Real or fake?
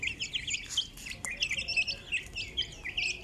real